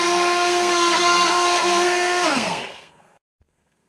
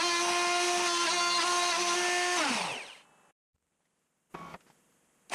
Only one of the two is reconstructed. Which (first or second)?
first